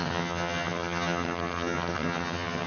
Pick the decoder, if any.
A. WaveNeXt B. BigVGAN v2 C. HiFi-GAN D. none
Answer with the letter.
C